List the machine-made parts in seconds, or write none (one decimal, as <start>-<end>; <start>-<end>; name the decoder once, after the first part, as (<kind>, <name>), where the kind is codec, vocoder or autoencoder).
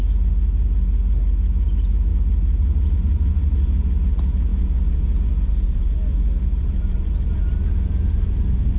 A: none